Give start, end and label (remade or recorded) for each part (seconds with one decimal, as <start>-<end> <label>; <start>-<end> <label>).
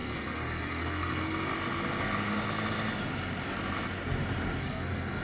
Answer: 0.0-1.5 remade; 1.5-4.6 recorded; 4.6-5.2 remade